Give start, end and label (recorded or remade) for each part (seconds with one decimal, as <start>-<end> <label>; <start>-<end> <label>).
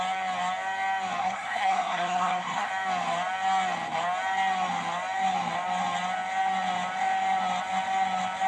0.0-1.2 recorded; 1.2-2.7 remade; 2.7-8.5 recorded